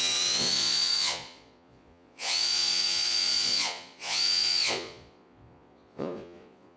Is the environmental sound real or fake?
fake